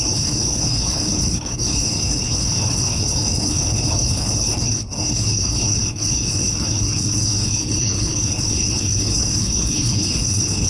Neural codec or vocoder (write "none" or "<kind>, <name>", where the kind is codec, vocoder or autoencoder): codec, HILCodec